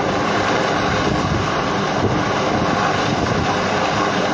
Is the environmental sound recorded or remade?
recorded